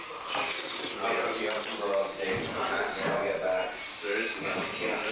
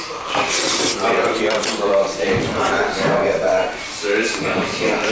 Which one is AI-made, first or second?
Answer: second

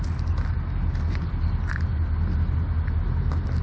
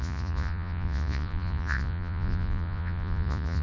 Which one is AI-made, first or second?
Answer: second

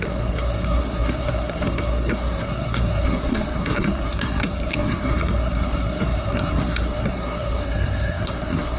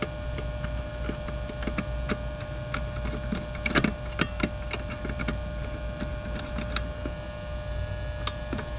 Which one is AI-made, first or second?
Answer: first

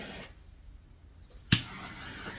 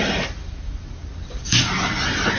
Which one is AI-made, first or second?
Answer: second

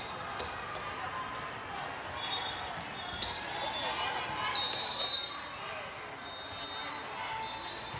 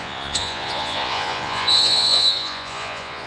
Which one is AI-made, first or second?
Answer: second